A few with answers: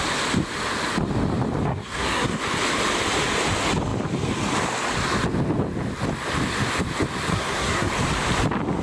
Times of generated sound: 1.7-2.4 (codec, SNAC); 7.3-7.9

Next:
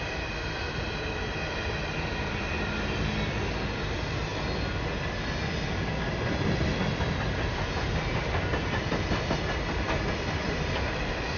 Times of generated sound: none

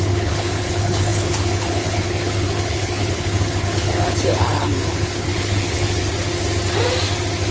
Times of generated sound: 0.0-6.0 (codec, HILCodec)

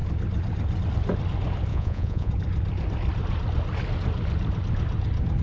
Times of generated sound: 1.7-2.3 (vocoder, Vocos)